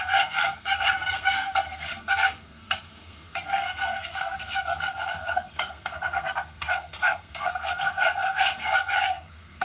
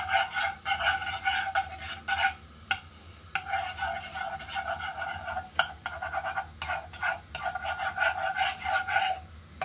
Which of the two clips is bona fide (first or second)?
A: second